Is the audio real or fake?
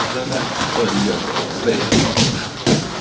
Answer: real